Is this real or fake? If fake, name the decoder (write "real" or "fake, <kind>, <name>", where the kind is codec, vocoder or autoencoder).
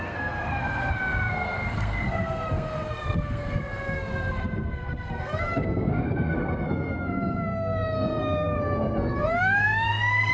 fake, codec, SNAC